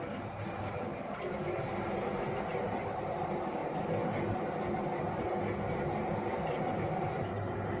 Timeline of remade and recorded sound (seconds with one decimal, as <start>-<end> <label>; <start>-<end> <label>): 0.0-7.8 recorded